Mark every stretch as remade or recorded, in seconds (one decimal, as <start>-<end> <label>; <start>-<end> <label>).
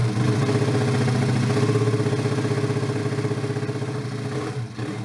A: 0.0-5.0 recorded